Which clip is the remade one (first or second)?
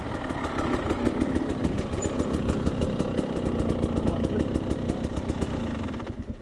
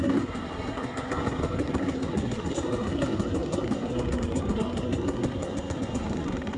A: second